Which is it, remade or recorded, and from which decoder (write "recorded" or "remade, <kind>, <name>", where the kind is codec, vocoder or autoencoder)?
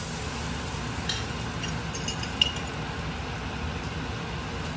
recorded